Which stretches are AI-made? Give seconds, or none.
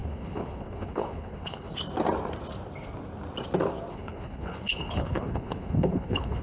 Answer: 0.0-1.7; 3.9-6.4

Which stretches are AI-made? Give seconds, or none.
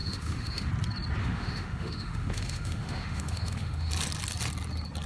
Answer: 0.0-0.7; 1.2-3.9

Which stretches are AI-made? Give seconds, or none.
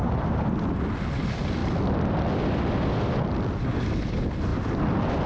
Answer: none